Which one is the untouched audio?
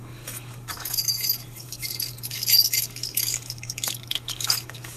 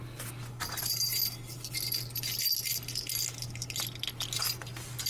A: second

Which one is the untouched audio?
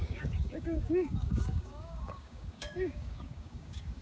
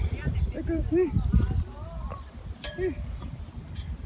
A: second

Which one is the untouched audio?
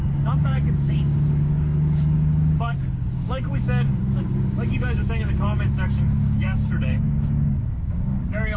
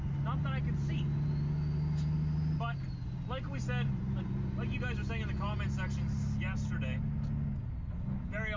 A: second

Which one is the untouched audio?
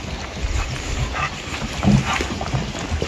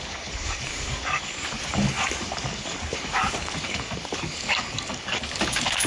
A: first